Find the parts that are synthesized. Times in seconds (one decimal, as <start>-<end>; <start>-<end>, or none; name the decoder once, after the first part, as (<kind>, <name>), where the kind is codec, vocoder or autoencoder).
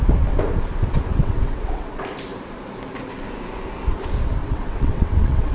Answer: 1.1-2.0 (vocoder, WaveNeXt); 4.4-5.5